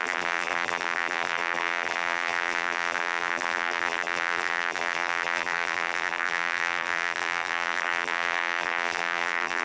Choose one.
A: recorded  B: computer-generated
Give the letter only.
B